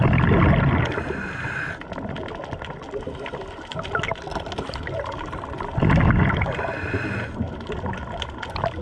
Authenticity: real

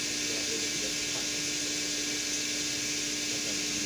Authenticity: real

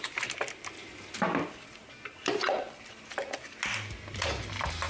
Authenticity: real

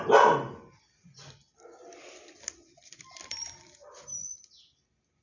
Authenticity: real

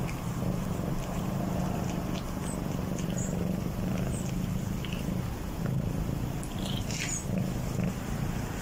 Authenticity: fake